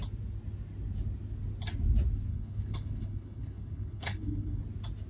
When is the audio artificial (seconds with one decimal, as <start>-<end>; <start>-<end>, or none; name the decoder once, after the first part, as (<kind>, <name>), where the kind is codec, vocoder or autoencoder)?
2.3-4.6 (codec, HILCodec)